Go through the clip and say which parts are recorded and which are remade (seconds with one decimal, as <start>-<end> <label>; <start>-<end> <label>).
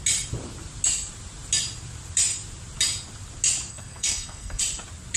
0.0-3.7 recorded; 3.7-4.6 remade; 4.6-5.2 recorded